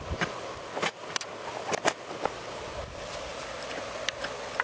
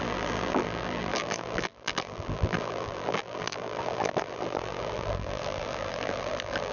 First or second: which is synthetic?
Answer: second